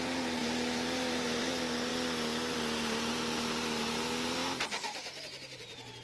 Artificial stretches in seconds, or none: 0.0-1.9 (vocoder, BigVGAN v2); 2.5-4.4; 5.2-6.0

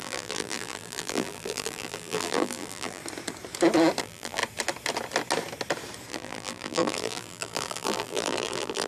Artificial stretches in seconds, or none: 0.0-3.0 (vocoder, BigVGAN v2); 4.0-4.4; 6.1-8.9

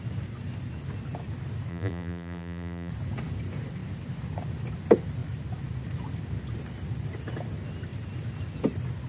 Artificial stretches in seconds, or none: 1.7-2.9 (vocoder, BigVGAN v2)